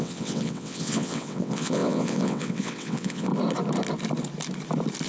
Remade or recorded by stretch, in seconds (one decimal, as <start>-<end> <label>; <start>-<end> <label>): 0.0-3.3 remade; 3.3-5.1 recorded